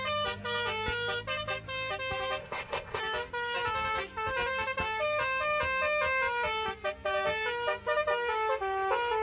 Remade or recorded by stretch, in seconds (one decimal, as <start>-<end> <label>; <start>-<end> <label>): 0.0-2.4 recorded; 2.4-3.0 remade; 3.0-9.2 recorded